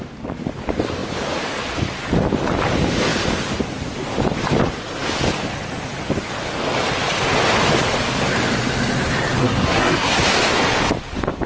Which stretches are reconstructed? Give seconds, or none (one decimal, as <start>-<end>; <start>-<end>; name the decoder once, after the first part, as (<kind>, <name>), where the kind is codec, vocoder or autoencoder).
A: 9.4-10.2 (codec, SNAC)